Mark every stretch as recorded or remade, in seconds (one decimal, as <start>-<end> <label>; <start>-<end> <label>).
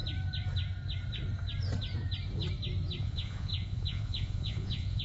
0.0-3.0 recorded; 3.0-5.0 remade